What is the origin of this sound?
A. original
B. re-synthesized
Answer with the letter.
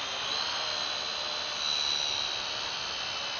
A